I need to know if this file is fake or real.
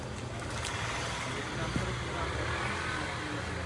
real